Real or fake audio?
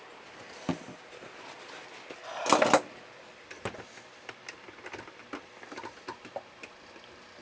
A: real